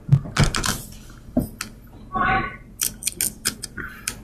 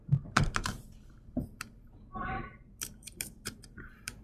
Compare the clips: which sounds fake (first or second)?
second